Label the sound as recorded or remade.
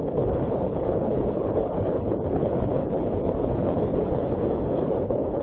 remade